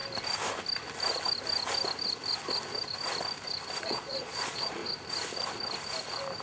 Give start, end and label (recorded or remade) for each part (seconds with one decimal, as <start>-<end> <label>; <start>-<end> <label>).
0.0-3.8 recorded; 3.8-4.8 remade; 4.8-6.4 recorded